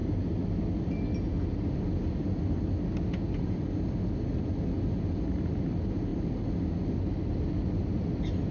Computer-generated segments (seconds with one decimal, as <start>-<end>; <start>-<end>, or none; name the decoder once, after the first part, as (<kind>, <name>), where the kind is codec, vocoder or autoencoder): none